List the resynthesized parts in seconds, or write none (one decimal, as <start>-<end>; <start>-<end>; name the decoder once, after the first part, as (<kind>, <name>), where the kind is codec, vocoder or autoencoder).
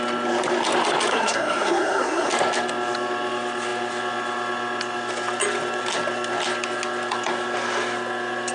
1.1-2.3 (codec, SNAC)